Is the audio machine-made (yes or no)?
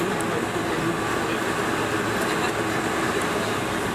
no